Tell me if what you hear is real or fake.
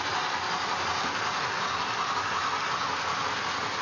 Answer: real